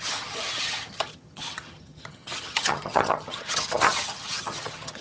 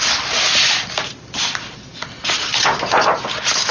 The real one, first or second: second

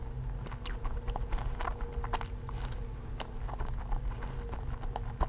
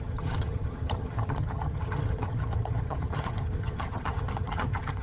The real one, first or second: first